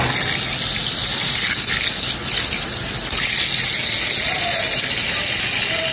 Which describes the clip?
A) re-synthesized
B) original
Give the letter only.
B